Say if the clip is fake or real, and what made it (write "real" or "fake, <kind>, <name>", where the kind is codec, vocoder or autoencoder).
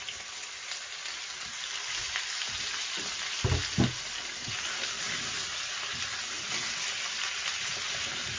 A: real